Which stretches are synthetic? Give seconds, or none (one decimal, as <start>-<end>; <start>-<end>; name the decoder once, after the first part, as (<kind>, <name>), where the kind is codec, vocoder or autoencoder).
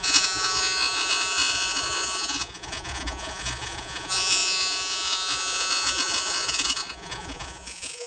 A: 0.0-8.1 (vocoder, Vocos)